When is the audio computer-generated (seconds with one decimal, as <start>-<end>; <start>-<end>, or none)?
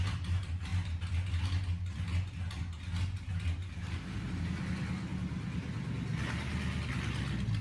none